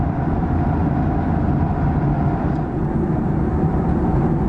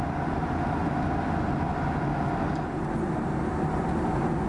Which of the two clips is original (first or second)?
second